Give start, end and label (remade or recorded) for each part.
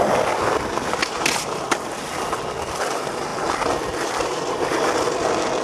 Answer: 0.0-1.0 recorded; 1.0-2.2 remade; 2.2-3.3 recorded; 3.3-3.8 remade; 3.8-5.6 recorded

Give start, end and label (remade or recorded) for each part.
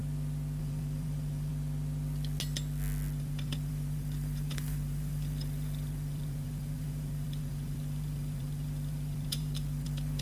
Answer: 0.0-0.6 recorded; 0.6-1.5 remade; 1.5-3.2 recorded; 3.2-10.2 remade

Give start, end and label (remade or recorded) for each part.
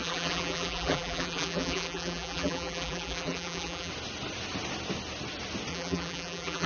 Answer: 0.0-3.9 remade; 3.9-5.7 recorded; 5.7-6.7 remade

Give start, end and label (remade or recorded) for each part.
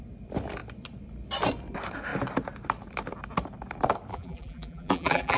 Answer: 0.0-4.1 recorded; 4.1-5.4 remade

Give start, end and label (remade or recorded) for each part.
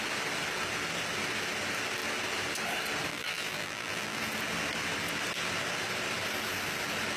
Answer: 0.0-3.1 recorded; 3.1-4.2 remade; 4.2-7.2 recorded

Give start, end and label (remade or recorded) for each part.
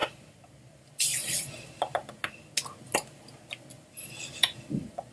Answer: 0.0-1.5 recorded; 1.5-2.0 remade; 2.0-3.9 recorded; 3.9-5.1 remade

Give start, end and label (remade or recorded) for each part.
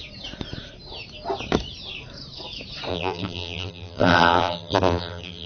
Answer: 0.0-2.9 recorded; 2.9-5.5 remade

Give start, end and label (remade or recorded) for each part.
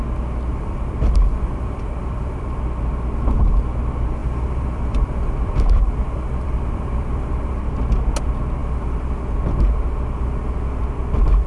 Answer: 0.0-0.5 recorded; 0.5-2.6 remade; 2.6-4.2 recorded; 4.2-7.6 remade; 7.6-8.6 recorded; 8.6-9.2 remade; 9.2-11.5 recorded